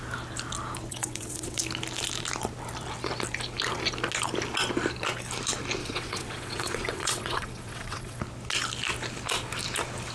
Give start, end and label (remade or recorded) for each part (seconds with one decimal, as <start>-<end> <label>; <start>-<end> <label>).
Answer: 0.0-0.9 recorded; 0.9-1.6 remade; 1.6-5.8 recorded; 5.8-8.2 remade; 8.2-10.1 recorded